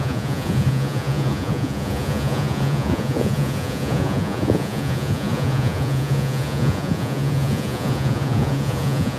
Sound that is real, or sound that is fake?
fake